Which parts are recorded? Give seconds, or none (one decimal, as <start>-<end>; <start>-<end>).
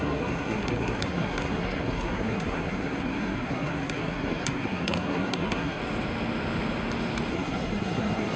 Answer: 5.8-7.3